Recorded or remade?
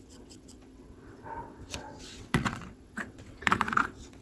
remade